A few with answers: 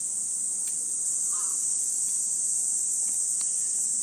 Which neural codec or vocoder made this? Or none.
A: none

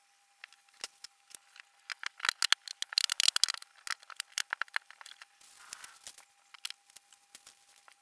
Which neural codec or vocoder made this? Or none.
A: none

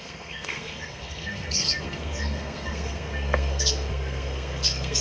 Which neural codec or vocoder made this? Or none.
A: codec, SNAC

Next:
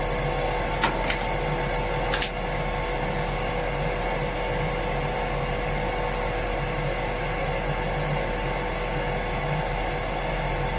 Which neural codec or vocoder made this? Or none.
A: none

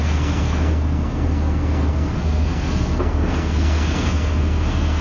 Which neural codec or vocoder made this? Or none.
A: codec, SNAC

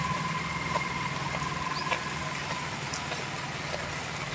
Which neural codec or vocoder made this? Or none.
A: none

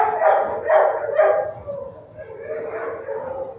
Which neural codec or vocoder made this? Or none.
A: none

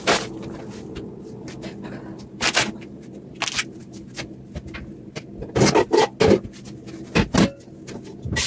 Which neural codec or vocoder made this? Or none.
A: none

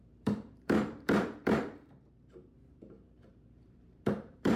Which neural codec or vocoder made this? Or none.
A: vocoder, BigVGAN v2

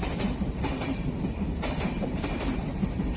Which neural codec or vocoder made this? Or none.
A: vocoder, BigVGAN v2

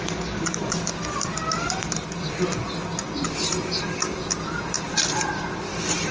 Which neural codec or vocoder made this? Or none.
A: none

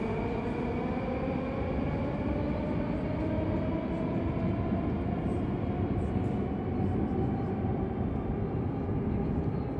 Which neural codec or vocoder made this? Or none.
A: none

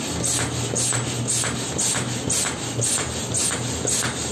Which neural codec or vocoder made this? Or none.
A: none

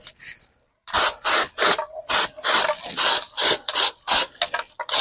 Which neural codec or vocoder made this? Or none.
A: none